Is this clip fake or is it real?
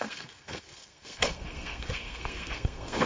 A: fake